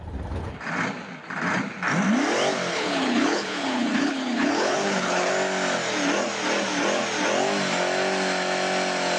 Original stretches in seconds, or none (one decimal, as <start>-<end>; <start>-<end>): 0.0-2.7; 5.3-9.2